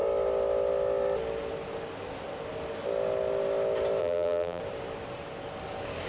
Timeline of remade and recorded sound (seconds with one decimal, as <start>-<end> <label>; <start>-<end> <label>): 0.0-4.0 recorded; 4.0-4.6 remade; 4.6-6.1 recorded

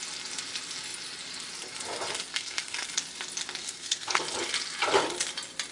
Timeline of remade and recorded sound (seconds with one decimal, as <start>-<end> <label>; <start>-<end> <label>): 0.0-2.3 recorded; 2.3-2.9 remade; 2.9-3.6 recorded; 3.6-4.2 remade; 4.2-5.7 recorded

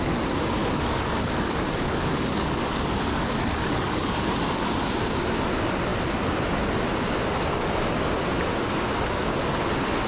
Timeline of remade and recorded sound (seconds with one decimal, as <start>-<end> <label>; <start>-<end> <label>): 0.0-0.6 recorded; 0.6-4.9 remade; 4.9-10.1 recorded

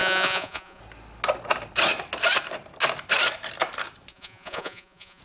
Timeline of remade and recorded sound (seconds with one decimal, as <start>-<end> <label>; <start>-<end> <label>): 0.0-0.8 remade; 0.8-4.1 recorded; 4.1-5.2 remade